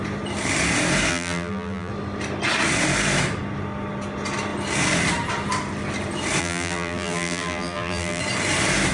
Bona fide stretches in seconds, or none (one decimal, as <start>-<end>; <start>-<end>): 0.0-1.1; 1.9-6.4; 8.2-8.9